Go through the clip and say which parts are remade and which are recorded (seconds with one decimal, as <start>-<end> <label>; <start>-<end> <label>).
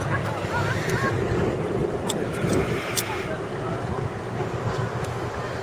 0.0-1.8 remade; 1.8-5.6 recorded